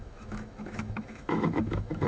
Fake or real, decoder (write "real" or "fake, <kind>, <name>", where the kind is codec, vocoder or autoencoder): fake, autoencoder, DAC-VAE